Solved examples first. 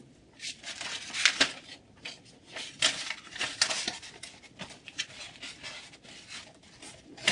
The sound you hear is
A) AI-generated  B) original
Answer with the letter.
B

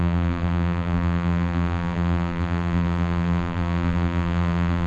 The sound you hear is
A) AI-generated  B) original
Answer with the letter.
A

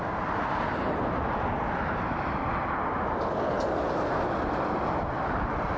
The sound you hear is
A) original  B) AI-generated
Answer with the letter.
A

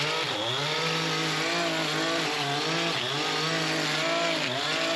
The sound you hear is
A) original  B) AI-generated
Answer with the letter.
A